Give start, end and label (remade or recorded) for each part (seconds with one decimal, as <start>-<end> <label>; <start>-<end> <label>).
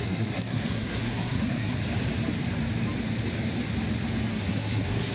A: 0.0-1.8 remade; 1.8-4.3 recorded; 4.3-5.1 remade